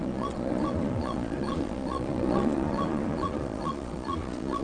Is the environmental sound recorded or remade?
remade